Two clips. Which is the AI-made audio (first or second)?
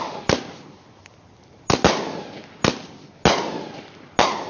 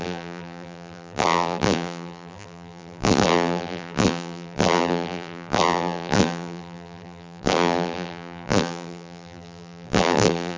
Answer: second